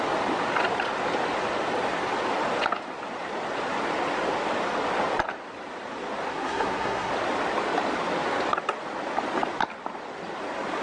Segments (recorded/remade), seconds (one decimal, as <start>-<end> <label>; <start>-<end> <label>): 0.0-6.3 recorded; 6.3-7.1 remade; 7.1-10.8 recorded